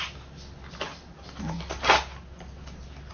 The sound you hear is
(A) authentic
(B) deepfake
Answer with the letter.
A